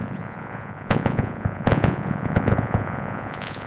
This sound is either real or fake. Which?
fake